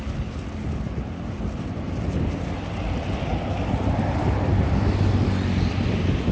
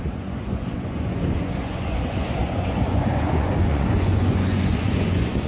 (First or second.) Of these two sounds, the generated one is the second